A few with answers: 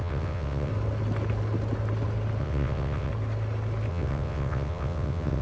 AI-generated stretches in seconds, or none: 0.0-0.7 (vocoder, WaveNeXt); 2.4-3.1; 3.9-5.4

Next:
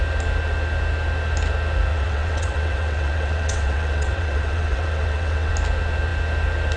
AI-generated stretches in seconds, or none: 1.9-5.5 (vocoder, WaveNeXt)

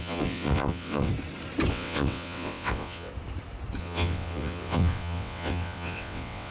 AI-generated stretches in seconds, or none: 0.0-1.1 (vocoder, WaveNeXt); 1.7-3.1; 3.8-6.5

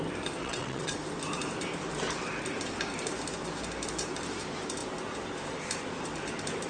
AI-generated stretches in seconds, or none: 0.4-0.9 (vocoder, WaveNeXt)

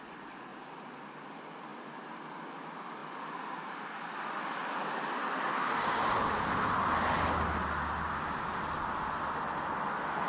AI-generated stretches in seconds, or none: none

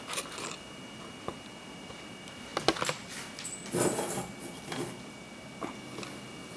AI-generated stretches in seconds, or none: none